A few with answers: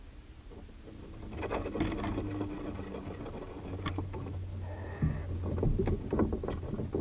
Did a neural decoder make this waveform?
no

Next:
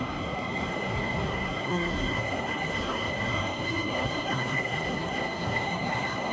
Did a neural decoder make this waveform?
yes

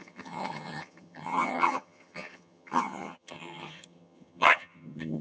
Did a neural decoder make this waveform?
yes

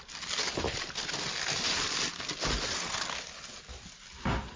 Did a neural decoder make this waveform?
no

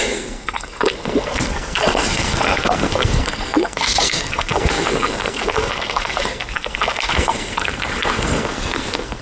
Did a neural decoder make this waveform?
yes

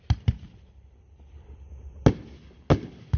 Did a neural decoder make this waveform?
no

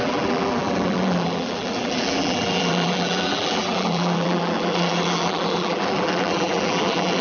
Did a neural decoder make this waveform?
yes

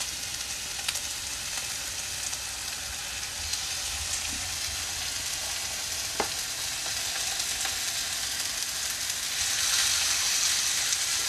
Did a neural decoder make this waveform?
no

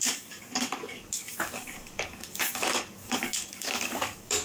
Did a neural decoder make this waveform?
yes